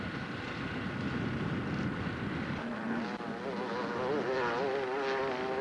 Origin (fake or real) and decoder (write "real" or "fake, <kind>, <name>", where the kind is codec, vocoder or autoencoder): real